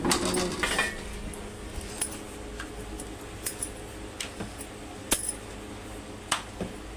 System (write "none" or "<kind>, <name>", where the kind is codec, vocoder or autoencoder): none